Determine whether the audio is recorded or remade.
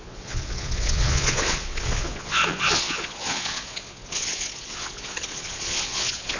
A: remade